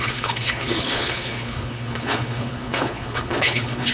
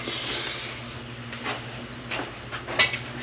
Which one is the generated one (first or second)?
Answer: first